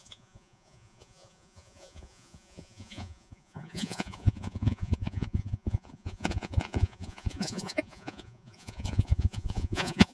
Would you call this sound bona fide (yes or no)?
no